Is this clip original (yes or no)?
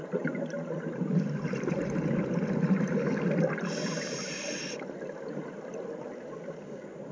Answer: yes